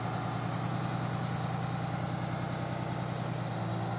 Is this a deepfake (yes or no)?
no